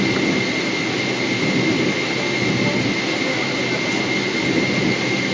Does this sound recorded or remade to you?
recorded